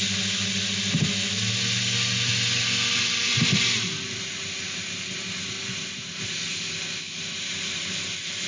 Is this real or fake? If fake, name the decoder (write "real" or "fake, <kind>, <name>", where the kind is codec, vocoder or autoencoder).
real